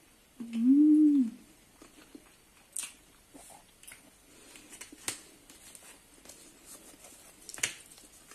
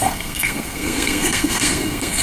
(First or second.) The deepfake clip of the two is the second